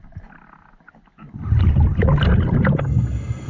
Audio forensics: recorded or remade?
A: recorded